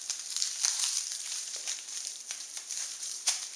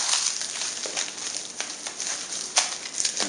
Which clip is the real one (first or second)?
second